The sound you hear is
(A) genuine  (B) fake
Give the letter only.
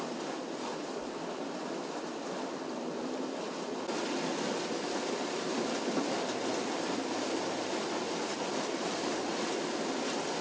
A